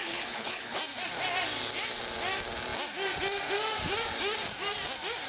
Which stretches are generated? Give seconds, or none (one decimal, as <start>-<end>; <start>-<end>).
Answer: 0.0-0.8